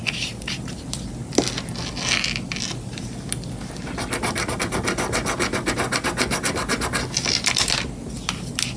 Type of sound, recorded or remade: recorded